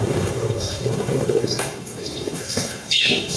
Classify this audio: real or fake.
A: fake